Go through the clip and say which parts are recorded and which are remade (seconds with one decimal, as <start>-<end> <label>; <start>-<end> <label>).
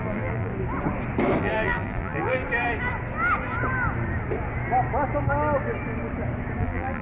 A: 0.0-0.5 remade; 0.5-1.4 recorded; 1.4-2.4 remade; 2.4-6.6 recorded; 6.6-7.0 remade